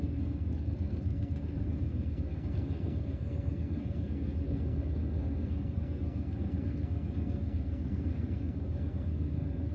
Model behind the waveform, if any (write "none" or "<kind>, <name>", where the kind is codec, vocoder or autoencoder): codec, SNAC